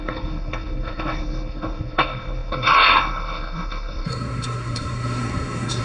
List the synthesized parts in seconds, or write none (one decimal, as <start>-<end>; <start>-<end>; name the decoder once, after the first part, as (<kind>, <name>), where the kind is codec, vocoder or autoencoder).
0.0-5.8 (codec, SNAC)